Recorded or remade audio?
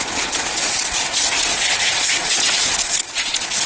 remade